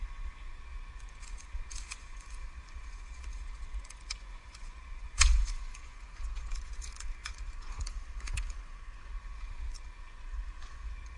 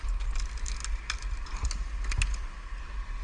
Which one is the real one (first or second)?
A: second